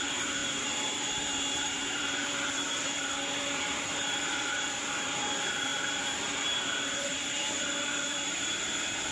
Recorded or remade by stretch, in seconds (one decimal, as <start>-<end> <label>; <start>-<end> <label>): 0.0-9.1 remade